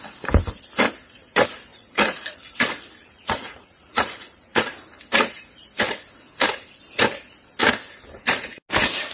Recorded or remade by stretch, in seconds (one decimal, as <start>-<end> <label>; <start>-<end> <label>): 0.0-1.7 recorded; 1.7-2.4 remade; 2.4-3.0 recorded; 3.0-4.7 remade; 4.7-9.1 recorded